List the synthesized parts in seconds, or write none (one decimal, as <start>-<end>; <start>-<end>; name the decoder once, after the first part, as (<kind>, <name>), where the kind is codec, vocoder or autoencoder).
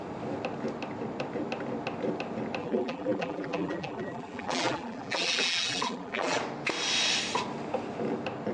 2.6-6.4 (vocoder, BigVGAN v2)